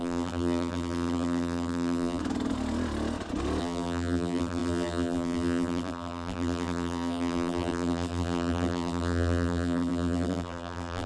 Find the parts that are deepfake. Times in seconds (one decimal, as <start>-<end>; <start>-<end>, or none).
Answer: 0.0-2.2; 3.6-11.1